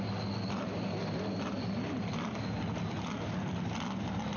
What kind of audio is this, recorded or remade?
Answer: recorded